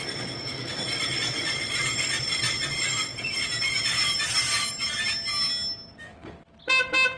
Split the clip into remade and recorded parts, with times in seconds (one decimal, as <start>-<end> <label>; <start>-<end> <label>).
0.0-7.2 recorded